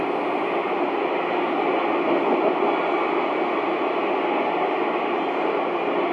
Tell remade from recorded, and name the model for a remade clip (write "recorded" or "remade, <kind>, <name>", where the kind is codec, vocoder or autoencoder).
recorded